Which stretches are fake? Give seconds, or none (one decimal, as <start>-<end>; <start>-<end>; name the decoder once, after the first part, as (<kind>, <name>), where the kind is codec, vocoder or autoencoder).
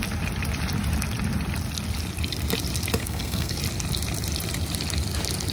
3.0-3.6 (codec, SNAC)